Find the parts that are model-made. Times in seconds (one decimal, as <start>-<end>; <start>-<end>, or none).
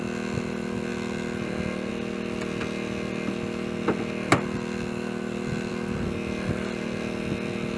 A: none